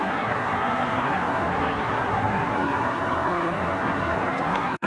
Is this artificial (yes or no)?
yes